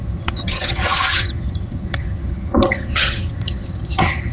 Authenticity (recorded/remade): remade